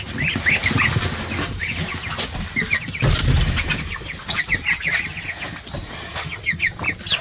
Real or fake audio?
real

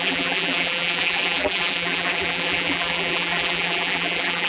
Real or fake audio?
fake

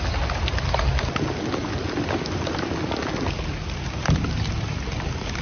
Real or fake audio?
real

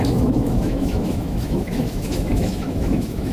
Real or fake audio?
fake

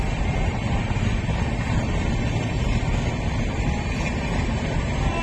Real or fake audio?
fake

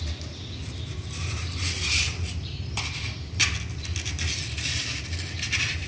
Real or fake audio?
real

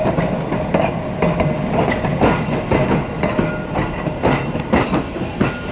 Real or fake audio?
real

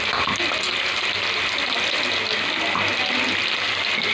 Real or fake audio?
real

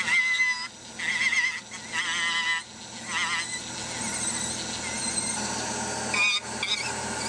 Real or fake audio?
real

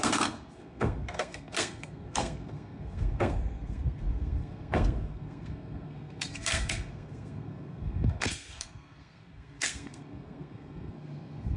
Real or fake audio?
fake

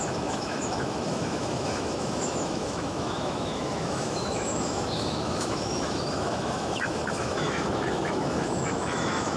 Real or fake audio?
fake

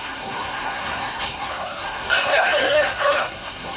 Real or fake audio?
fake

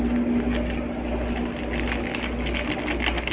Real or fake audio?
real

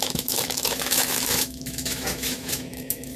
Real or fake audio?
fake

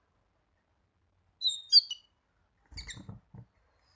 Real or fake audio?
real